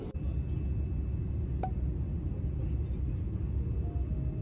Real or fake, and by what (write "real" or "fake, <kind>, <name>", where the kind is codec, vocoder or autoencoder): real